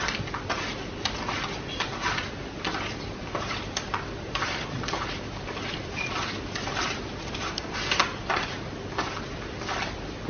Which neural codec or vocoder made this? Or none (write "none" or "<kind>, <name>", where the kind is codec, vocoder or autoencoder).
none